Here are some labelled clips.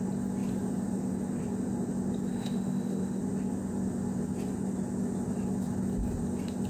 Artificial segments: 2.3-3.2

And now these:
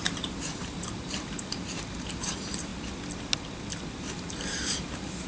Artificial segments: 0.0-2.7; 4.2-5.3

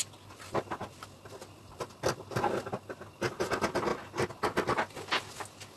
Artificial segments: none

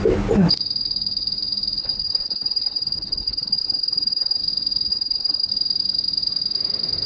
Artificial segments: 1.8-4.4; 4.9-5.5

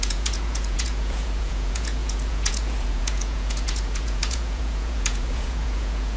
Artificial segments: 0.0-6.2

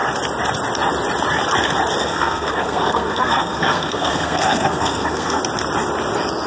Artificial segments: 2.0-5.4